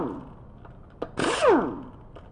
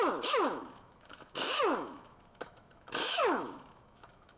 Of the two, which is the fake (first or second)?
second